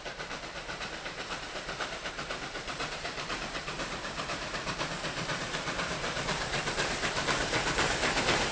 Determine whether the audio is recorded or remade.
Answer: remade